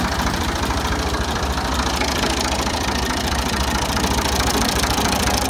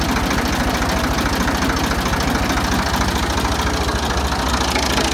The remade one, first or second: first